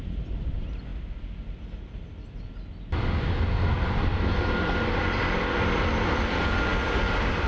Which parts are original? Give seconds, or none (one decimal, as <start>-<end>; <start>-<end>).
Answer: 0.0-7.5